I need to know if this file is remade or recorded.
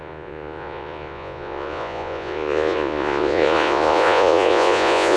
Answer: remade